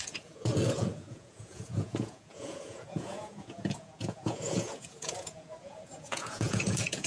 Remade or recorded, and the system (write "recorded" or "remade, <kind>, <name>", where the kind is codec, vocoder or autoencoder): remade, vocoder, Vocos